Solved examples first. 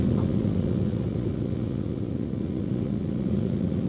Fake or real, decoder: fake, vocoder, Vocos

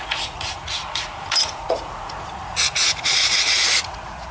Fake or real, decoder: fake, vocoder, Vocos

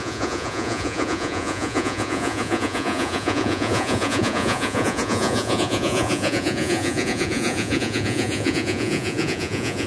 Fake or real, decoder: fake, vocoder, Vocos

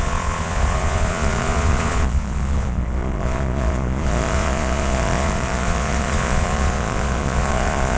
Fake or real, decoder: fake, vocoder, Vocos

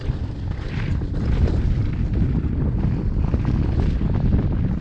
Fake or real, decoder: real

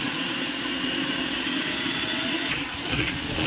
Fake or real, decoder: fake, vocoder, Vocos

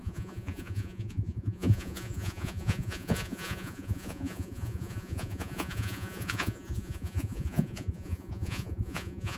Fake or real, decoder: fake, vocoder, Vocos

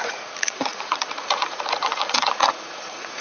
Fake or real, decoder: fake, vocoder, Vocos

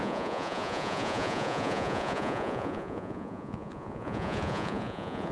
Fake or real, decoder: fake, vocoder, Vocos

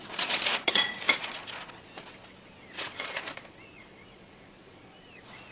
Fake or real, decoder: fake, vocoder, Vocos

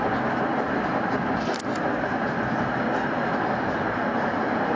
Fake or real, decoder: real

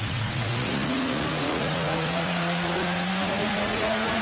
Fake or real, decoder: fake, vocoder, Vocos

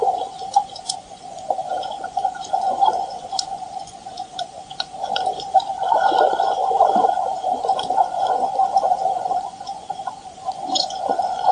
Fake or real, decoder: fake, vocoder, Vocos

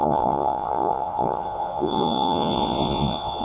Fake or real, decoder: fake, vocoder, Vocos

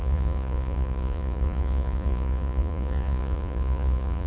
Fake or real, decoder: fake, vocoder, Vocos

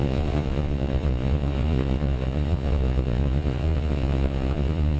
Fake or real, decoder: fake, vocoder, Vocos